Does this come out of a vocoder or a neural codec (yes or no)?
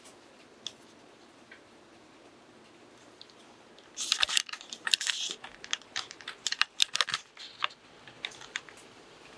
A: no